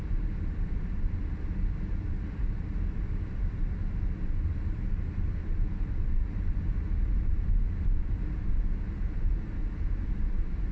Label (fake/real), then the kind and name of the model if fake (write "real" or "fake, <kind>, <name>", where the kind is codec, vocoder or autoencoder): real